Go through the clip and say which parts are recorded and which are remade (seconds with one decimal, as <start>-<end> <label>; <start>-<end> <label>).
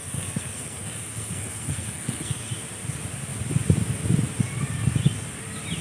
0.0-2.5 remade; 2.5-5.8 recorded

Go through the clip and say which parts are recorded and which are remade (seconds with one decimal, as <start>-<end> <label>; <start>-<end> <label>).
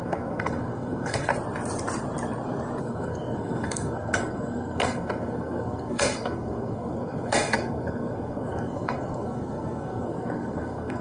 0.0-1.3 remade; 1.3-2.8 recorded; 2.8-11.0 remade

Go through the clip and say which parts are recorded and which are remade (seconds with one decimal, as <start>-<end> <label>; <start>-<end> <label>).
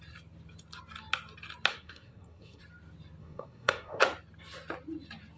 0.0-1.7 recorded; 1.7-2.6 remade; 2.6-3.2 recorded; 3.2-4.0 remade; 4.0-5.4 recorded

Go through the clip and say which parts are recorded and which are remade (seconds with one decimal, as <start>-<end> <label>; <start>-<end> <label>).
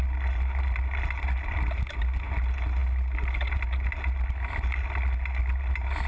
0.0-6.1 recorded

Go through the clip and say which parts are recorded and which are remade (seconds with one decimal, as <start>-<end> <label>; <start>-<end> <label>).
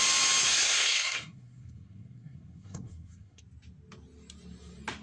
0.0-0.4 recorded; 0.4-3.4 remade; 3.4-5.0 recorded